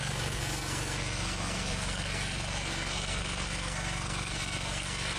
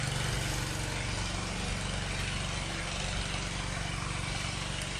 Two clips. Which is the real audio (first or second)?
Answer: second